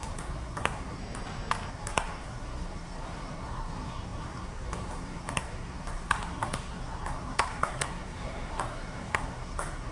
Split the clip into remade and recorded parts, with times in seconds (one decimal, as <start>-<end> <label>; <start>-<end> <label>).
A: 0.0-1.0 remade; 1.0-1.7 recorded; 1.7-9.9 remade